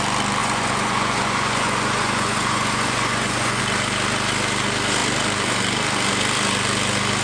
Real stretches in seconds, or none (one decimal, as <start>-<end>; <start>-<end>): 0.0-0.4; 3.6-7.2